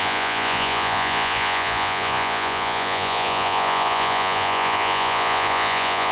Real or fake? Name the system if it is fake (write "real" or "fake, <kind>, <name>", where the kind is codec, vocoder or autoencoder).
fake, vocoder, Vocos